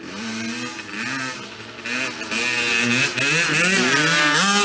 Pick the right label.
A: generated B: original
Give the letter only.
B